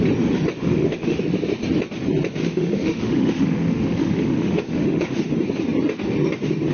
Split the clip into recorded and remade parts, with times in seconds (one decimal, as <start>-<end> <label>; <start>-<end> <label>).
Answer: 0.0-0.6 recorded; 0.6-1.2 remade; 1.2-2.4 recorded; 2.4-5.3 remade; 5.3-6.7 recorded